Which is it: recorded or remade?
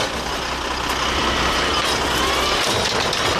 recorded